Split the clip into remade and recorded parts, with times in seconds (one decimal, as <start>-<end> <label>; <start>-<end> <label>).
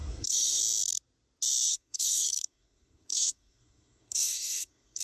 0.0-0.6 remade; 0.6-1.7 recorded; 1.7-5.0 remade